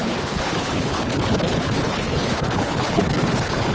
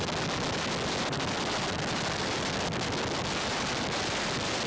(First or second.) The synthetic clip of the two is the first